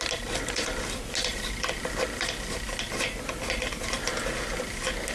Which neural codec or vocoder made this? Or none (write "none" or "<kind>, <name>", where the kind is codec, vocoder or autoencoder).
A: none